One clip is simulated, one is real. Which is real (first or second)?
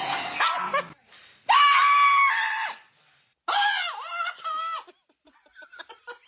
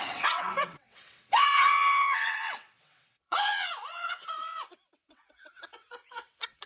first